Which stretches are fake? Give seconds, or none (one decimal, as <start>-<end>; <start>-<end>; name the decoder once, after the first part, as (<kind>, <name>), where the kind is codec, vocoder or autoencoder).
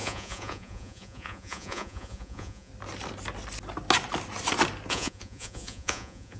0.0-2.7 (vocoder, Vocos); 4.9-6.4